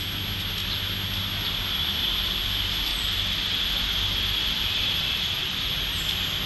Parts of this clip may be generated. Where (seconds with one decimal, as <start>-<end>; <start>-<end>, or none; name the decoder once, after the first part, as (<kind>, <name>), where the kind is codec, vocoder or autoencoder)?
2.9-5.7 (vocoder, BigVGAN v2)